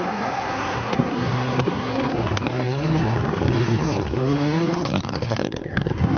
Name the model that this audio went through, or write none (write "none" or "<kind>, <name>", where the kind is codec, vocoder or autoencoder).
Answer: codec, SNAC